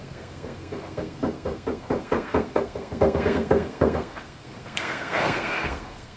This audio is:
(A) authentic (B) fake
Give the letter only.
B